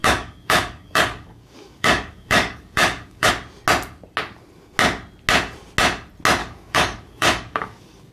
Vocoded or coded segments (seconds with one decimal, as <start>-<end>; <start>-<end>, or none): 0.0-3.3; 6.4-8.1

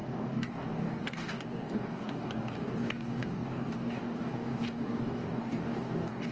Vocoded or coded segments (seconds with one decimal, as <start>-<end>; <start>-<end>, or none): 0.0-6.3

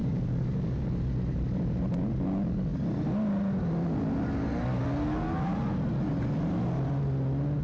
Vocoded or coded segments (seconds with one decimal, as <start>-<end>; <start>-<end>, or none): 0.0-0.9

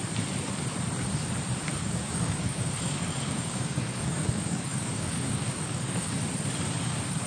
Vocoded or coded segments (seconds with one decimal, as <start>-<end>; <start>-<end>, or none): 1.7-6.1